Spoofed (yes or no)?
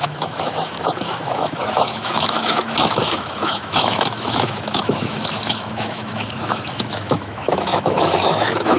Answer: yes